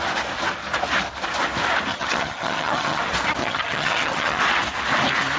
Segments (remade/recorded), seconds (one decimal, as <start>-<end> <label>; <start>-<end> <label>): 0.0-1.9 recorded; 1.9-3.0 remade; 3.0-3.4 recorded; 3.4-4.4 remade; 4.4-5.4 recorded